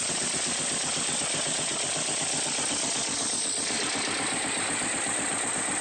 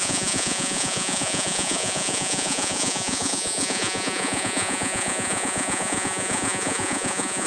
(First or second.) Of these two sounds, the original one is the first